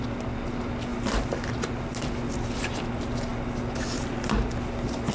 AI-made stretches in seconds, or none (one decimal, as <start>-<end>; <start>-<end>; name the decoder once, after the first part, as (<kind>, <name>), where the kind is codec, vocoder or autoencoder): none